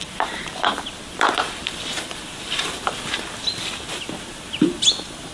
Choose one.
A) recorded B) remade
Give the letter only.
A